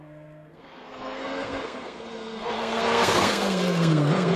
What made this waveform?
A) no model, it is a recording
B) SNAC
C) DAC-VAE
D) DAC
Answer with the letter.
B